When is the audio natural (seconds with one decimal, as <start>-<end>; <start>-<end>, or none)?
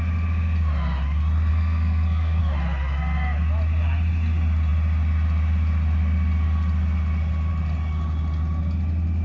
0.0-1.5; 2.4-9.2